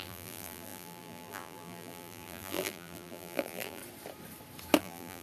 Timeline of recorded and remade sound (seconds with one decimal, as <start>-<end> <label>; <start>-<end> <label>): 0.0-3.8 remade; 3.8-4.8 recorded; 4.8-5.2 remade